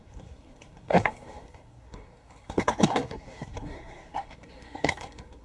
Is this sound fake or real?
fake